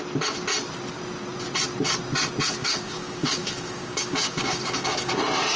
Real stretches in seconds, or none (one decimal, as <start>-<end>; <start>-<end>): 0.0-2.6; 5.1-5.6